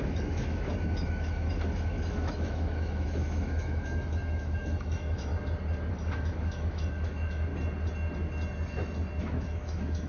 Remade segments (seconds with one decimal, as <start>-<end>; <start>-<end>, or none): 0.0-5.3; 5.9-7.5; 9.2-10.1